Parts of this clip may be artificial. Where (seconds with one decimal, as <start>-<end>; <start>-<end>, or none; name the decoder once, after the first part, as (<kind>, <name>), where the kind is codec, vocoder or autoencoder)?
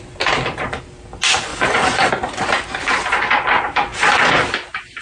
1.5-2.1 (vocoder, Vocos)